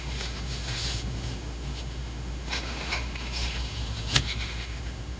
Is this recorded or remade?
remade